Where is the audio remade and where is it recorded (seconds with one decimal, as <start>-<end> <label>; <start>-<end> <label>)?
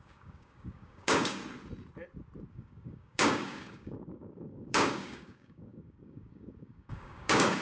0.0-1.4 remade; 1.4-2.5 recorded; 2.5-7.6 remade